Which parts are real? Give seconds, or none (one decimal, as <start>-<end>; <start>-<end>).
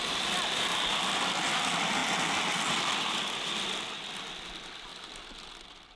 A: 0.0-0.7; 1.5-4.9; 5.5-6.0